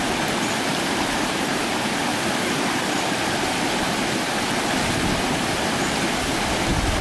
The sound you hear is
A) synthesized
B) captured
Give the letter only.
B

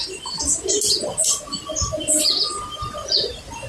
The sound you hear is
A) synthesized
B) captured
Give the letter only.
B